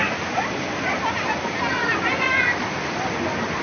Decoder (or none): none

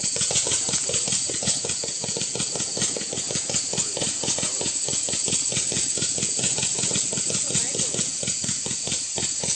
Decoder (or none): vocoder, Vocos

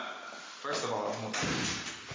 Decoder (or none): none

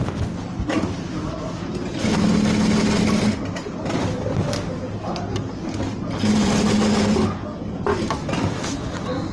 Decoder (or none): none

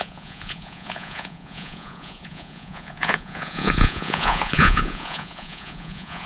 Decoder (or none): vocoder, Vocos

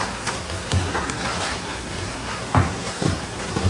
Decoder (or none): codec, SNAC